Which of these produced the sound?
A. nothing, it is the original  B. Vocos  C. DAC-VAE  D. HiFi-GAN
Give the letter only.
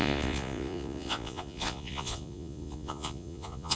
B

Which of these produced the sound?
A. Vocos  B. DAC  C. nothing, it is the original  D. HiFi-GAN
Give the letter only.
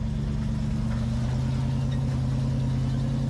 C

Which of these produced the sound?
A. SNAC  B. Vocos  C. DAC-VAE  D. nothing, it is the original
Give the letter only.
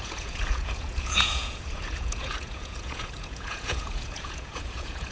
B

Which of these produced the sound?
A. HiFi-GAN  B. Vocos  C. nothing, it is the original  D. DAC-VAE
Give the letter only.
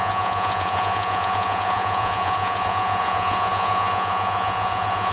B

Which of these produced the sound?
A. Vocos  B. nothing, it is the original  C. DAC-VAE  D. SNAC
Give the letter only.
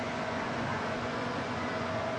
A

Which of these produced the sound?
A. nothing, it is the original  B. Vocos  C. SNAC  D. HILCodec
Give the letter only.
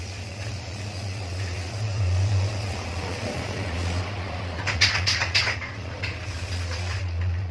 B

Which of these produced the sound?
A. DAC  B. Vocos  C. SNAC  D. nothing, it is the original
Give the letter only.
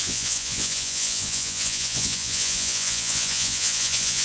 B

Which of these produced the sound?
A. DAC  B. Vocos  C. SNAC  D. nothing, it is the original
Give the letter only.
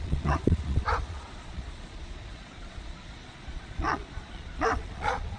B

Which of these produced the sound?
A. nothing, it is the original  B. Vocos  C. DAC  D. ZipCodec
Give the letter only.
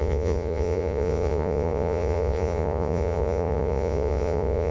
B